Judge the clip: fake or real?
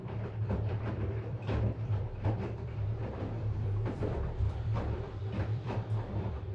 fake